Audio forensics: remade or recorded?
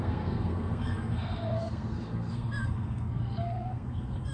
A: remade